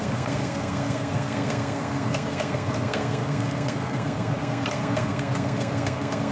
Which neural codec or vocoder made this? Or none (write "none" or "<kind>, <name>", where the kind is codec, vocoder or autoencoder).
codec, SNAC